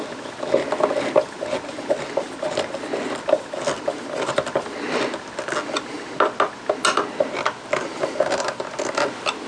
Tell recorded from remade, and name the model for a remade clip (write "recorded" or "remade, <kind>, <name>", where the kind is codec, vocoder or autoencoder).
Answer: recorded